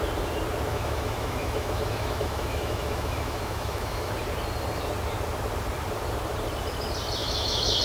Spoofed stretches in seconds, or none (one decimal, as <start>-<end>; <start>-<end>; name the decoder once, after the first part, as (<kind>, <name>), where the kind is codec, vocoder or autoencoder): 0.7-4.1 (autoencoder, DAC-VAE); 7.2-7.8